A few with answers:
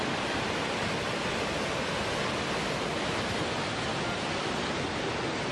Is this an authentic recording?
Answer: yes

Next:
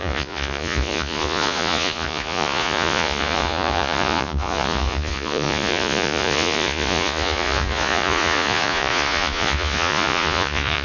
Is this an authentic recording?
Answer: no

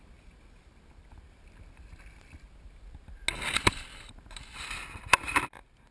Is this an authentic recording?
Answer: yes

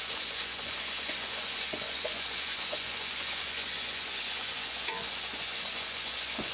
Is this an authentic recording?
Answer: no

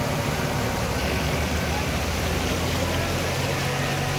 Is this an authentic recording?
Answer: yes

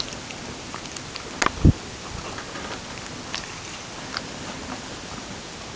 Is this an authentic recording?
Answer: yes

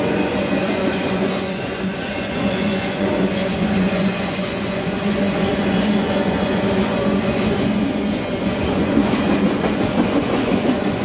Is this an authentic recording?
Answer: no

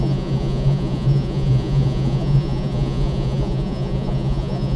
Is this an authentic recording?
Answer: no